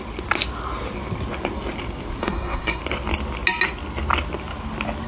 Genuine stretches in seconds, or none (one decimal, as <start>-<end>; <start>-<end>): 0.0-2.2; 2.8-5.1